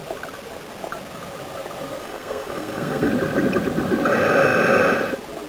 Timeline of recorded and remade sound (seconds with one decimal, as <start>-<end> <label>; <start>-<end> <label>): 0.0-2.0 recorded; 2.0-3.1 remade; 3.1-5.5 recorded